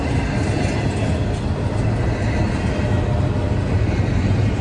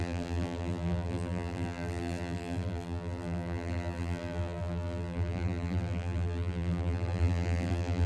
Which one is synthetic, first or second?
second